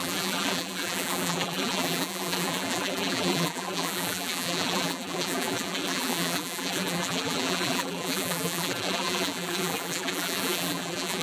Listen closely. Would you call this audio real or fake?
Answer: fake